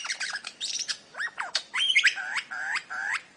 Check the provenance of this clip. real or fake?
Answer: fake